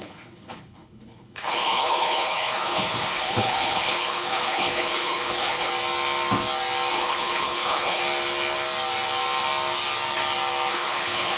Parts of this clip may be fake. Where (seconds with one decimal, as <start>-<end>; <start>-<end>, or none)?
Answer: 0.0-5.7; 6.9-8.0; 10.7-11.4